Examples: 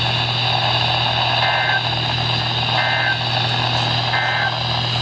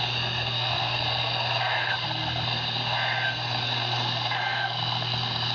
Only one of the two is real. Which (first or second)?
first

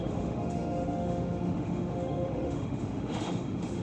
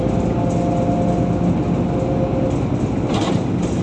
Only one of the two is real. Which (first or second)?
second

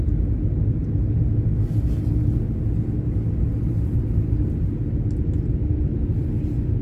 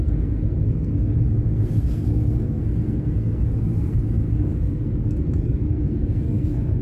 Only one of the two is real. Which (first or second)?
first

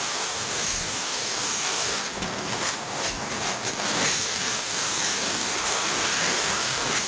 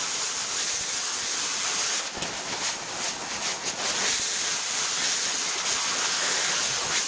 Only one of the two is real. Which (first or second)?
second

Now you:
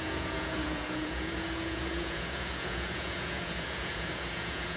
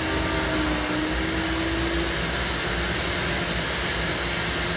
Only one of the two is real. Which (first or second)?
second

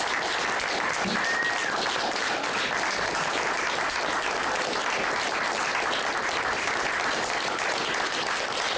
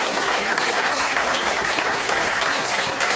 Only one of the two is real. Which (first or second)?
first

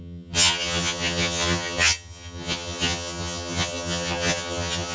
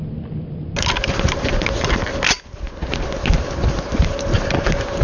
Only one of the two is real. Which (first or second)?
second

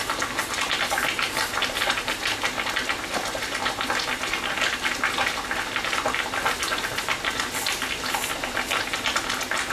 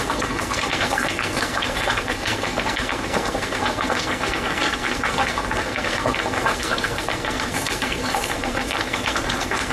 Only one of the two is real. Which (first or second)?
first